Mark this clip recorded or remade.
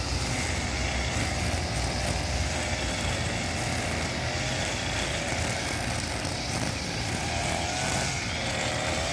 recorded